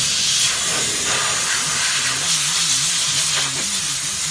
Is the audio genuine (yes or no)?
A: yes